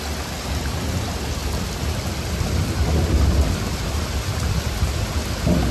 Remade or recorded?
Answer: recorded